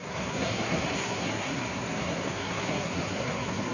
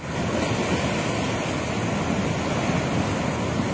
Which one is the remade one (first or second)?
first